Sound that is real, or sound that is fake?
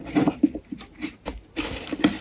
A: real